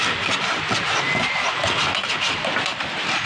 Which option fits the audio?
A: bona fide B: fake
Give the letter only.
A